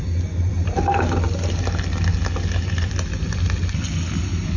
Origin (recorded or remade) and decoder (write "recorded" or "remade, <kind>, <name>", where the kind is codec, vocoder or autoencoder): recorded